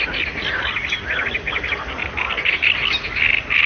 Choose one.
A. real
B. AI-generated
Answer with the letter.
A